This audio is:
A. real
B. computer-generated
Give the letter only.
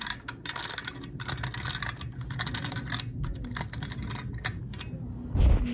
A